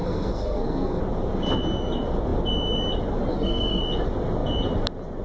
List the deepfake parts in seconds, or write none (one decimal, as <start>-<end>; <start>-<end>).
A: 0.0-1.0; 3.3-3.8